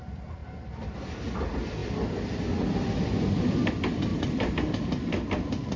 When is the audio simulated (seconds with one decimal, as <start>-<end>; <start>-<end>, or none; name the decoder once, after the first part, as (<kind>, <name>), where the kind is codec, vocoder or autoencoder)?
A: 0.4-1.0 (vocoder, BigVGAN v2); 1.8-2.4

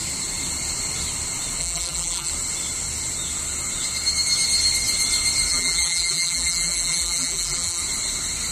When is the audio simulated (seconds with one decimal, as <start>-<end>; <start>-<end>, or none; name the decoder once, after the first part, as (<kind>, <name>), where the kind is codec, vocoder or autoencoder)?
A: 1.6-2.3 (vocoder, BigVGAN v2); 5.5-7.8

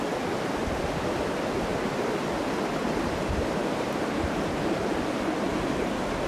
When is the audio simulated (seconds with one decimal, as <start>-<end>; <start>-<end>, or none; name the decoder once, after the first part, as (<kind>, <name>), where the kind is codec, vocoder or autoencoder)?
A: 3.6-4.4 (vocoder, BigVGAN v2)

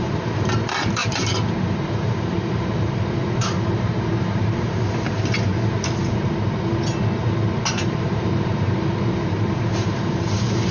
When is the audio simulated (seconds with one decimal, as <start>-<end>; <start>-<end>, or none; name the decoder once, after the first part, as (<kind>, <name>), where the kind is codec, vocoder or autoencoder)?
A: 0.0-5.5 (vocoder, BigVGAN v2); 7.7-10.7

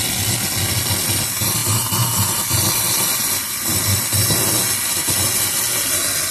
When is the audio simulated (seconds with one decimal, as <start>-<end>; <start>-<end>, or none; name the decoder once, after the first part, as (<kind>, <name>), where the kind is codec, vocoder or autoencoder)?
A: none